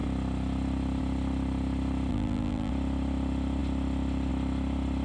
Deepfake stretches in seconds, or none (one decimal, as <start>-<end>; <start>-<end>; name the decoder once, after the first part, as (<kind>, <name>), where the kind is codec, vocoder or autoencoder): 2.1-2.7 (vocoder, BigVGAN v2)